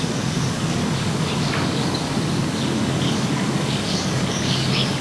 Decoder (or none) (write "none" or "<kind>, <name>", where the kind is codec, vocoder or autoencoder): codec, DAC